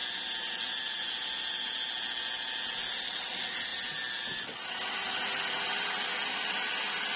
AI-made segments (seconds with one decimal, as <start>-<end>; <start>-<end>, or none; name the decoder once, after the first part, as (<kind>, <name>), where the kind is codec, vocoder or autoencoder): none